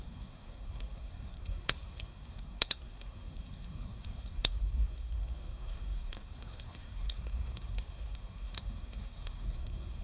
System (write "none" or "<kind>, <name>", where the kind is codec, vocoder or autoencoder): codec, SNAC